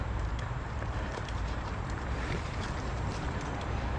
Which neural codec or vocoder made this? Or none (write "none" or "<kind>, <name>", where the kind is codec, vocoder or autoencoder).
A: vocoder, BigVGAN v2